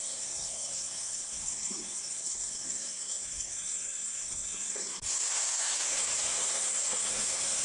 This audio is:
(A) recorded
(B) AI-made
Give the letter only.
B